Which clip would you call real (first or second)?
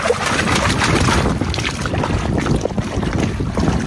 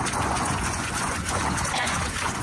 first